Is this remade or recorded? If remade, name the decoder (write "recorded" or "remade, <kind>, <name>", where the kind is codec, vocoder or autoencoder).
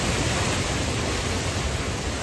recorded